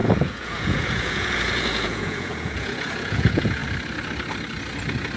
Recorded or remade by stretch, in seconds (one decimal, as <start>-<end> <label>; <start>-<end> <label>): 0.0-3.6 remade; 3.6-5.2 recorded